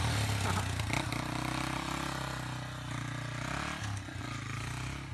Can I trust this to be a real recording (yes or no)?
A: yes